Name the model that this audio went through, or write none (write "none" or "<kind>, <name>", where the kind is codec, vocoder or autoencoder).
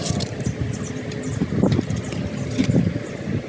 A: none